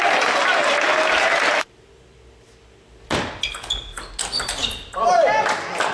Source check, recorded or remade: recorded